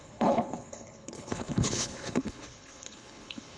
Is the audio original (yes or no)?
no